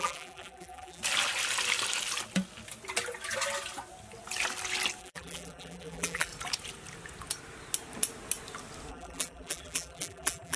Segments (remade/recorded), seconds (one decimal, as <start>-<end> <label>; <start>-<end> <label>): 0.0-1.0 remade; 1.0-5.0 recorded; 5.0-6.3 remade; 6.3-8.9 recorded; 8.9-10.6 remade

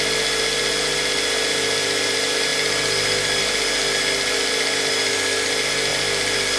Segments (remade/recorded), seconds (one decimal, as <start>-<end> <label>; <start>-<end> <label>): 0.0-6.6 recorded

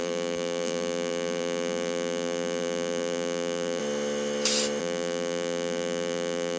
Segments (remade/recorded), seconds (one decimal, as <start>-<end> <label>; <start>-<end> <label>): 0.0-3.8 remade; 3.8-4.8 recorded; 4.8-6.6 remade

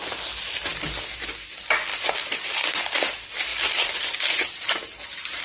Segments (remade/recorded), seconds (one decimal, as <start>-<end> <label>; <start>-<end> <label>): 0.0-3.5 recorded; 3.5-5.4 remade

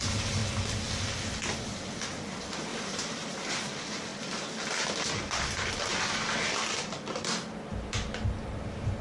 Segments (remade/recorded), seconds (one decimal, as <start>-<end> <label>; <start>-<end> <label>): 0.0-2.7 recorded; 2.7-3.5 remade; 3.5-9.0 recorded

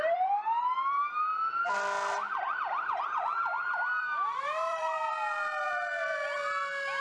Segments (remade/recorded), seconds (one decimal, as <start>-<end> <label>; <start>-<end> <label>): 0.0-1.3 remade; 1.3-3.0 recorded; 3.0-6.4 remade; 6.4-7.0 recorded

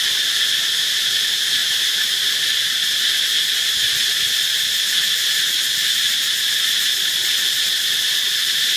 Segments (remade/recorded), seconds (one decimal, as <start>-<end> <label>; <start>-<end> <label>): 0.0-1.6 recorded; 1.6-2.4 remade; 2.4-8.8 recorded

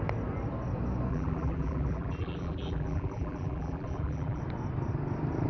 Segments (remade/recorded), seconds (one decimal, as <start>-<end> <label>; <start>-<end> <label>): 0.0-1.1 recorded; 1.1-4.4 remade; 4.4-5.5 recorded